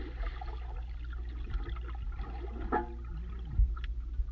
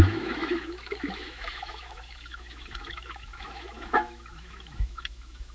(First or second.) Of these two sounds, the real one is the first